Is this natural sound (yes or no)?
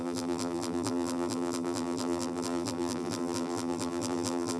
no